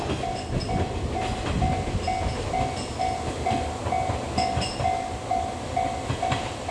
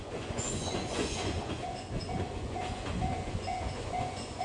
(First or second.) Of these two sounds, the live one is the first